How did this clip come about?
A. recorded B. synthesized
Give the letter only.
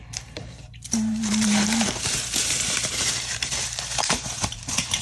B